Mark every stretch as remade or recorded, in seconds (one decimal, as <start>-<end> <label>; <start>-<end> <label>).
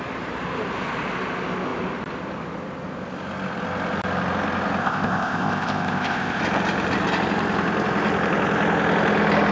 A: 0.0-4.8 recorded; 4.8-6.4 remade; 6.4-9.5 recorded